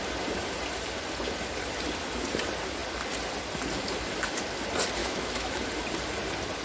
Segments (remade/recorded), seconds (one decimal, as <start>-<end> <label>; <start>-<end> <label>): 0.0-5.0 recorded; 5.0-5.6 remade; 5.6-6.6 recorded